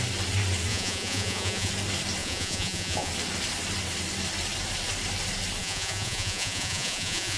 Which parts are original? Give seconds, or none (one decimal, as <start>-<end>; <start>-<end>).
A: 0.0-0.7; 1.7-2.2; 3.1-5.6